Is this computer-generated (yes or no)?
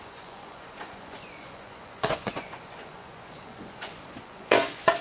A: yes